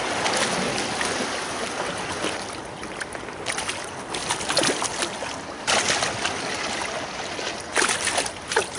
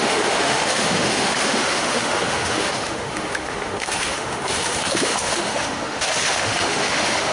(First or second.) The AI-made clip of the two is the second